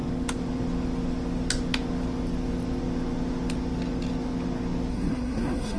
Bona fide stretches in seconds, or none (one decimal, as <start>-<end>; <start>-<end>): 0.0-4.9